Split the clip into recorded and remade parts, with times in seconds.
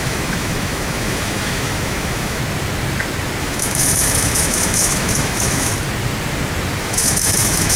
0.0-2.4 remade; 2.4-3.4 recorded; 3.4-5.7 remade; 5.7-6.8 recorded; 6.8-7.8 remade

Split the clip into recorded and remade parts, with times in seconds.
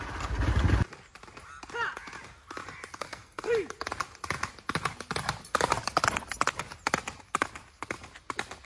0.0-3.0 recorded; 3.0-3.5 remade; 3.5-8.6 recorded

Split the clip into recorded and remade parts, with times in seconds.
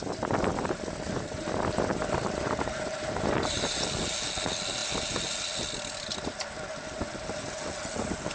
0.0-8.3 recorded